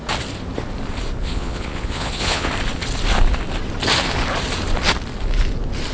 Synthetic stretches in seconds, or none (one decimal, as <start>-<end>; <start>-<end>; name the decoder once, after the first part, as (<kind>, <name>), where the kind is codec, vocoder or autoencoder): 1.2-2.5 (vocoder, Vocos)